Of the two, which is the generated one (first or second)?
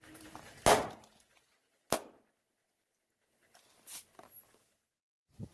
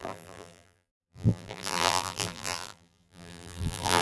second